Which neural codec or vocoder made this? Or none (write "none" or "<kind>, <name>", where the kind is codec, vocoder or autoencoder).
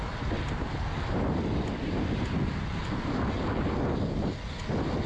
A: none